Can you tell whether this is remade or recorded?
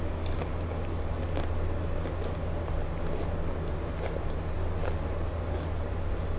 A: recorded